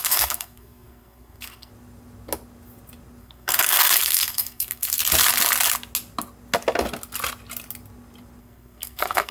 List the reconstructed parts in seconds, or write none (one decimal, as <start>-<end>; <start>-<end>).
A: 0.0-1.7; 3.2-5.0; 8.4-9.3